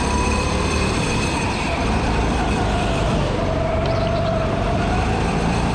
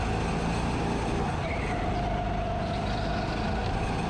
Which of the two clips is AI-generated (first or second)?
first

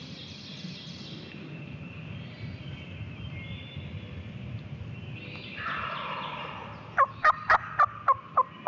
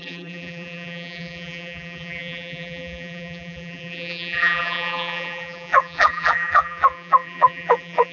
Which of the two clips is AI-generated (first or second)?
second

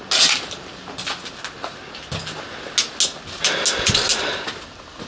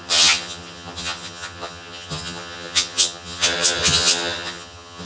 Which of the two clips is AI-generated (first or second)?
second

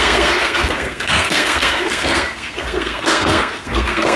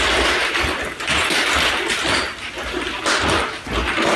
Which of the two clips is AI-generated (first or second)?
first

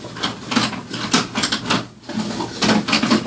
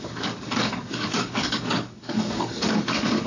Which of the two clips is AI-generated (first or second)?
second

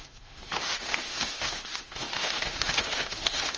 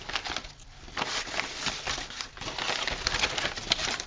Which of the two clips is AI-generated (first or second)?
first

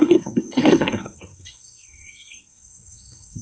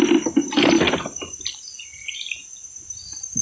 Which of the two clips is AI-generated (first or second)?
first